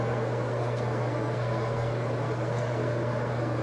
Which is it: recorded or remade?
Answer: remade